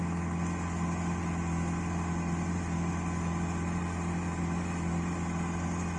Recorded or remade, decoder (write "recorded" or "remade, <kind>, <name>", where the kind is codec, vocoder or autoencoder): recorded